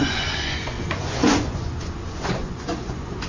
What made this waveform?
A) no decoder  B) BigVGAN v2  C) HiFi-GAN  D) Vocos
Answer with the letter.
D